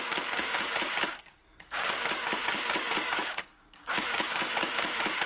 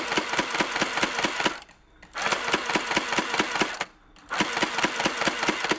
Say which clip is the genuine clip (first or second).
second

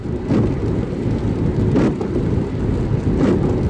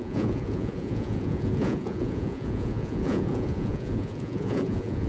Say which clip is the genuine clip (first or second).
first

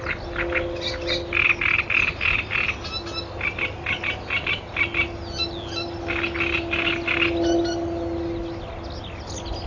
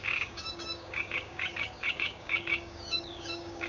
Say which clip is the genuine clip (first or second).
first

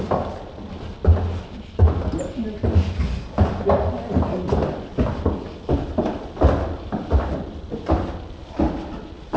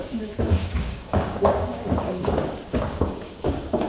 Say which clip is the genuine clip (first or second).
first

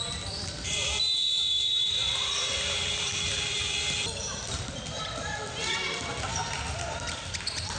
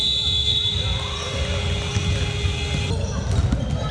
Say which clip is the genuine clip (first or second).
second